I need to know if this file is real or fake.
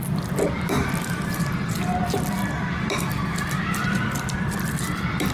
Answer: real